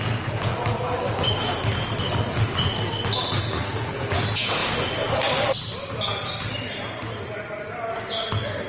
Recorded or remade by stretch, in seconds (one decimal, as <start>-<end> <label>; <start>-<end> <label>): 0.0-0.5 remade; 0.5-3.9 recorded; 3.9-4.6 remade; 4.6-8.7 recorded